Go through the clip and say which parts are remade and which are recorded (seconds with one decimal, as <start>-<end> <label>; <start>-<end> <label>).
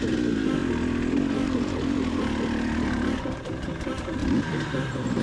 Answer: 0.0-0.6 recorded; 0.6-3.7 remade; 3.7-4.2 recorded; 4.2-5.2 remade